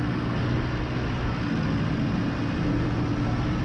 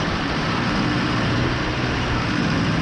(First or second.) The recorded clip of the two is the first